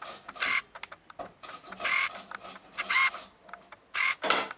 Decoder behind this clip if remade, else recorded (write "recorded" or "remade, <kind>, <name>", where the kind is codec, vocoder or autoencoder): recorded